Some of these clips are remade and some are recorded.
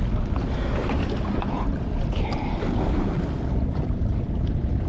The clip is recorded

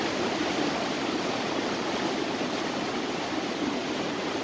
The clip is recorded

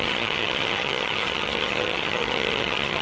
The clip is remade